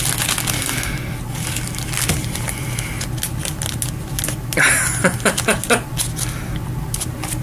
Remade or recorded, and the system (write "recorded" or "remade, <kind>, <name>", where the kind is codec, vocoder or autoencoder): recorded